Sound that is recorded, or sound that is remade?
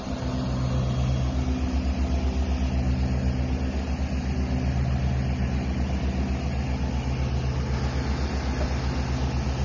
recorded